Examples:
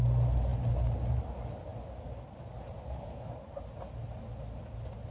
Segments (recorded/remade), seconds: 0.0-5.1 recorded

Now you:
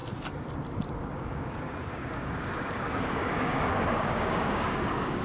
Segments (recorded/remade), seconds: 0.0-1.0 recorded; 1.0-5.2 remade

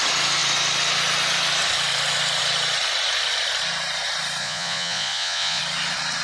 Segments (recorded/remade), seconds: 0.0-4.4 recorded; 4.4-5.6 remade; 5.6-6.2 recorded